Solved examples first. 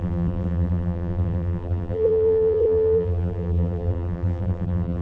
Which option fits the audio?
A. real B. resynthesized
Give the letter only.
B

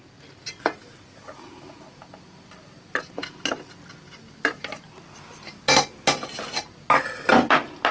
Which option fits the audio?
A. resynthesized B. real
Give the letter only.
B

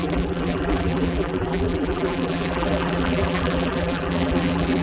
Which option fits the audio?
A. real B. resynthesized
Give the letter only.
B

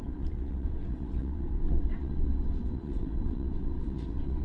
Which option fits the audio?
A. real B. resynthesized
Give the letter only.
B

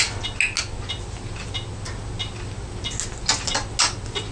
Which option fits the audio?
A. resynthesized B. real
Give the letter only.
B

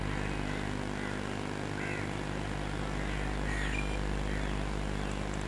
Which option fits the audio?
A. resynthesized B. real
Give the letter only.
B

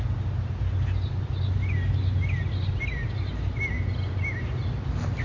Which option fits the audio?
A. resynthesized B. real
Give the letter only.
B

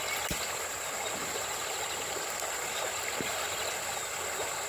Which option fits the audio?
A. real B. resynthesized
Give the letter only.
A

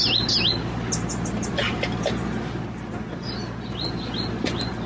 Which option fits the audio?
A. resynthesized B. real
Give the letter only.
B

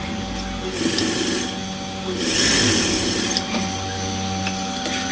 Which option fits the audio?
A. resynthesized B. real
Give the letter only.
B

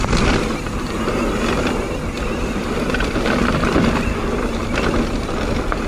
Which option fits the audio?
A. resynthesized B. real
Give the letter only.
B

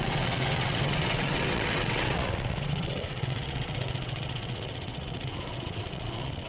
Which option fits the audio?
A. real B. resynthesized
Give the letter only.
B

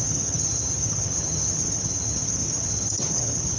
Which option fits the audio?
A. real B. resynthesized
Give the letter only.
B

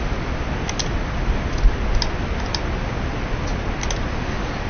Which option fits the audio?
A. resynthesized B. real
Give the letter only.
B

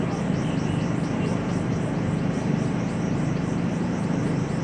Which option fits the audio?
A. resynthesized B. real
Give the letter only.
A